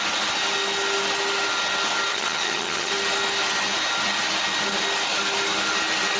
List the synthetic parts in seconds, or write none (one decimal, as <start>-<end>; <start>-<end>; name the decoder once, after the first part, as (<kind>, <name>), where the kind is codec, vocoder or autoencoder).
2.1-2.9 (vocoder, HiFi-GAN)